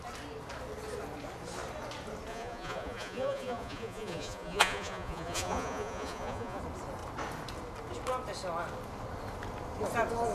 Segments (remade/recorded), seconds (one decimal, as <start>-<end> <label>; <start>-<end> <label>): 0.0-2.3 recorded; 2.3-6.6 remade; 6.6-10.3 recorded